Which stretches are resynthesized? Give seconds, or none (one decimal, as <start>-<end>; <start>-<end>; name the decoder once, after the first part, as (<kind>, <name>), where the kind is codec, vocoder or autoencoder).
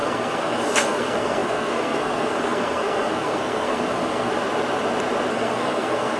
0.0-4.3 (codec, SNAC); 5.3-6.2